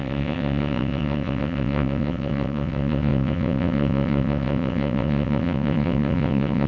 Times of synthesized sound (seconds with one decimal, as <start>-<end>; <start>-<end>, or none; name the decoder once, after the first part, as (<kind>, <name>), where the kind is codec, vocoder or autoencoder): 0.0-6.7 (vocoder, WaveNeXt)